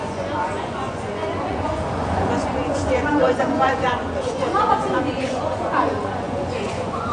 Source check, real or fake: fake